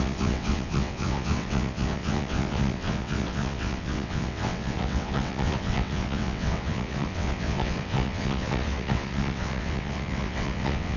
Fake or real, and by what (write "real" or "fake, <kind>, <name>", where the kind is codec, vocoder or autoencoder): fake, vocoder, WaveNeXt